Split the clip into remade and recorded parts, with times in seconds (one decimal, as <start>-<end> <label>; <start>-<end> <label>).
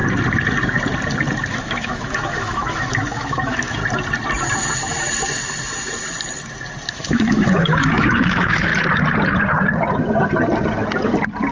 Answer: 0.0-1.5 recorded; 1.5-3.8 remade; 3.8-6.9 recorded; 6.9-8.7 remade; 8.7-11.5 recorded